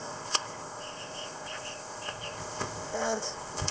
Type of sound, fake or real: fake